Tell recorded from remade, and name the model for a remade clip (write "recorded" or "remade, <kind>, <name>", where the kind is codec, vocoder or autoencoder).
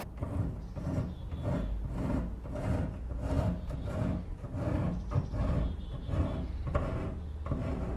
recorded